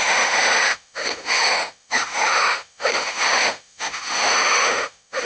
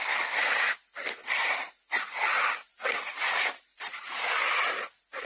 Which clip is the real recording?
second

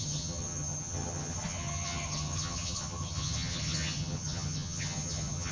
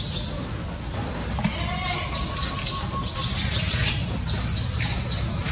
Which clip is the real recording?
second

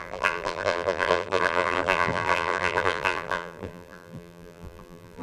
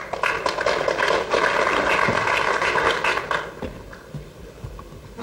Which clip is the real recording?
second